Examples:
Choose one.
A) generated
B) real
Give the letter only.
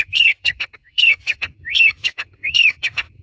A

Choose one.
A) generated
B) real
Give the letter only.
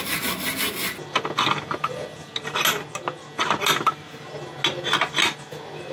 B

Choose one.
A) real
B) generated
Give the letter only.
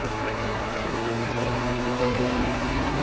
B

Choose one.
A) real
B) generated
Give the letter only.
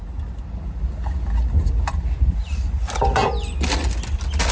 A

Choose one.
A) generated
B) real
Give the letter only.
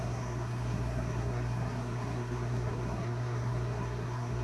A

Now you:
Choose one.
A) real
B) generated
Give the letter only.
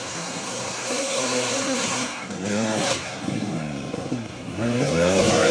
B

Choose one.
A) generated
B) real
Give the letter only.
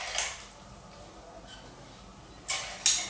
B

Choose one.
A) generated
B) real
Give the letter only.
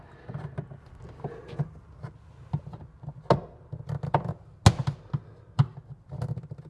B